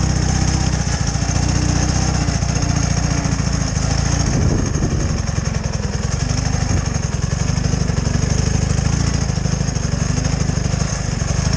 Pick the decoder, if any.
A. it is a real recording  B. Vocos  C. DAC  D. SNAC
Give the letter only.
A